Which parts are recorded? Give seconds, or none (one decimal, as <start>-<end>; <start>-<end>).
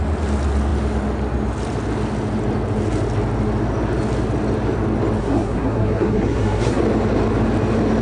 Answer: 0.0-5.2; 6.8-8.0